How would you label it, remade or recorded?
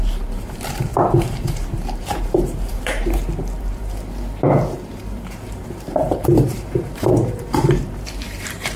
remade